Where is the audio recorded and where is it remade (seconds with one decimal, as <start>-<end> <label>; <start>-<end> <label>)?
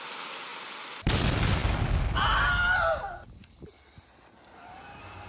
0.0-5.3 recorded